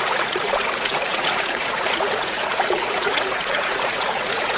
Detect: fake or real fake